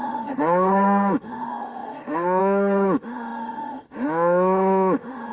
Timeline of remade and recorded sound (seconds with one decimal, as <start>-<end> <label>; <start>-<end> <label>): 0.0-5.3 remade